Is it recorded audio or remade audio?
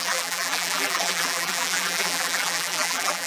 remade